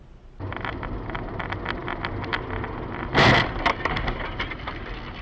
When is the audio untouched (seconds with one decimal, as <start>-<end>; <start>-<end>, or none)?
0.0-5.2